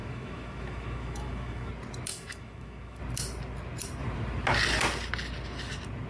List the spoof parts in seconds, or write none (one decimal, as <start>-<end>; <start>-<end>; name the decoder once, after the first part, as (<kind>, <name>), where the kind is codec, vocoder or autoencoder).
0.0-1.7 (autoencoder, DAC-VAE); 2.1-3.0